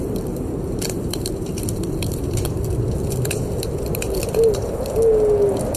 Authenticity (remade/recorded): recorded